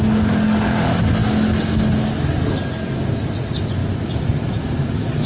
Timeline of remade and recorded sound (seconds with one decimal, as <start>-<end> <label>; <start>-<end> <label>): 0.0-5.3 recorded